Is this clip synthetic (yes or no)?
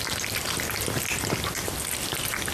no